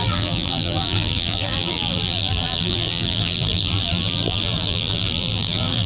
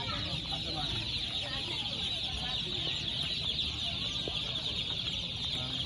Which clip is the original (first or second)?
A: second